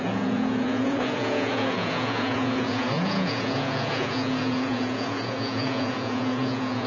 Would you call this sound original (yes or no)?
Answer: no